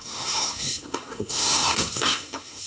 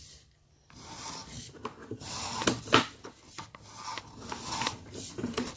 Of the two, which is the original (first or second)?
second